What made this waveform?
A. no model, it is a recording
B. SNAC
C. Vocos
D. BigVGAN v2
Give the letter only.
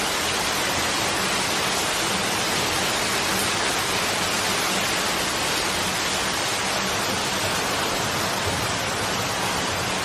A